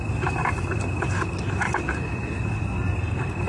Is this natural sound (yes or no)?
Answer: yes